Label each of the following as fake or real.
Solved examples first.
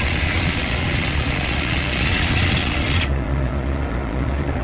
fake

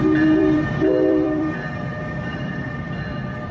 fake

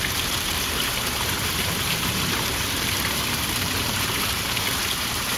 fake